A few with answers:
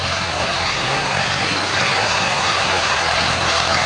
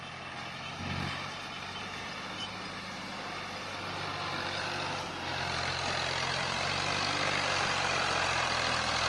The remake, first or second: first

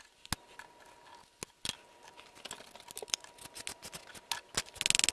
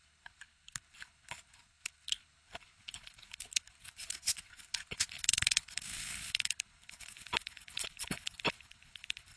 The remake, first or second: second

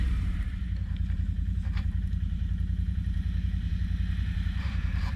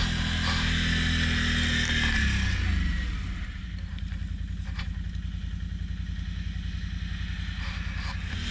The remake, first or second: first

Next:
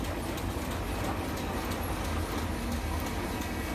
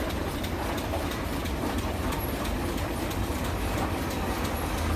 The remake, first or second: second